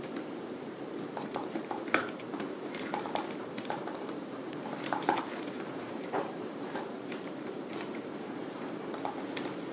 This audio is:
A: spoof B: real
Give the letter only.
A